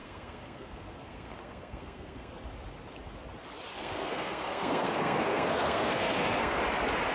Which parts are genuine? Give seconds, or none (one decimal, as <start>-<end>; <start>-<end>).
2.3-3.7; 6.6-7.1